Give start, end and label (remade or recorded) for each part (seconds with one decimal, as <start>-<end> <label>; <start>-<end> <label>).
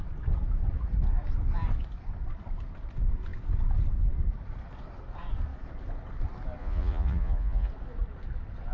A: 0.0-6.6 recorded; 6.6-7.7 remade; 7.7-8.7 recorded